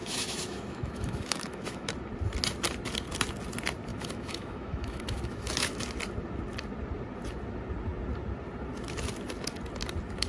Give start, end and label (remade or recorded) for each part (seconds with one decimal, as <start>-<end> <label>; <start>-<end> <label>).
0.0-1.9 remade; 1.9-3.9 recorded; 3.9-5.8 remade; 5.8-10.3 recorded